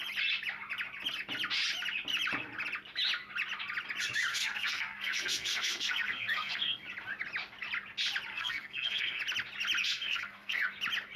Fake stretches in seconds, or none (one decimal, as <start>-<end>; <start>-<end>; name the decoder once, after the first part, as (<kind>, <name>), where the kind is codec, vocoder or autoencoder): 4.3-6.8 (codec, SNAC); 8.3-9.2; 9.8-10.7